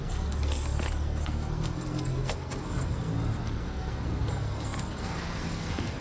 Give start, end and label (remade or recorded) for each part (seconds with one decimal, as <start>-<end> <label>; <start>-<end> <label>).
0.0-6.0 remade